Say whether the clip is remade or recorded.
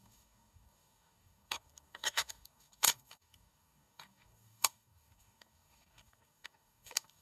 remade